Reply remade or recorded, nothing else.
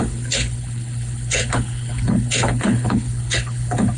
remade